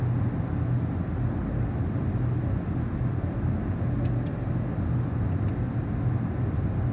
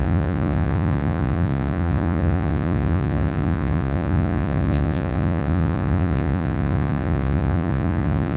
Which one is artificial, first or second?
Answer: second